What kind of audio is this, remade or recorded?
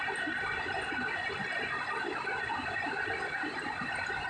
recorded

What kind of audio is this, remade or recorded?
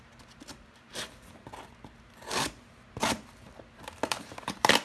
recorded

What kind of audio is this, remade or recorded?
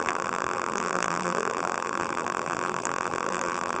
remade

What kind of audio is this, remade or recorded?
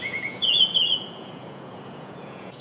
remade